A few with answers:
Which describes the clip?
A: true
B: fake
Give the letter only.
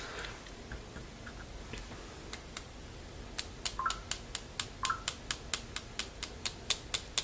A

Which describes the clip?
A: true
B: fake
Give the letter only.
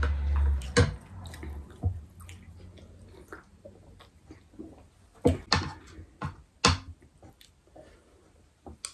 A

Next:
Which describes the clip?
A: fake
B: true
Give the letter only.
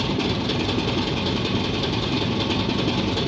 A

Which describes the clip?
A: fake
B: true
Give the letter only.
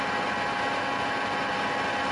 B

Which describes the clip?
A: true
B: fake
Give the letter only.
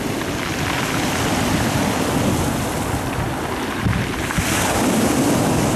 A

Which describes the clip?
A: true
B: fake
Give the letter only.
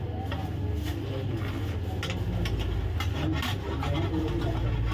A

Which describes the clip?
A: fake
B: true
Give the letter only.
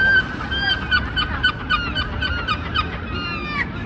B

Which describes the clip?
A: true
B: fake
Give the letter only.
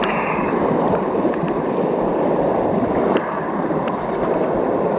B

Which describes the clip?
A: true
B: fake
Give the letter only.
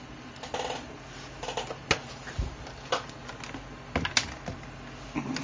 A